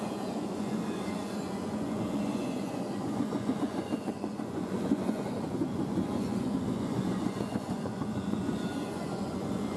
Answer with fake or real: fake